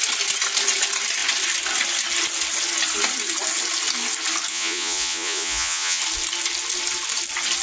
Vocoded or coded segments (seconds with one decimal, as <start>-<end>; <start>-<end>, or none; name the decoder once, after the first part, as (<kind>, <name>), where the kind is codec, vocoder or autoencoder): 4.5-6.0 (vocoder, Vocos)